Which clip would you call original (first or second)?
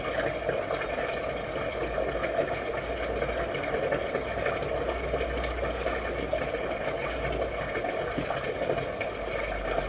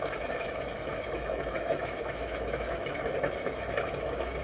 first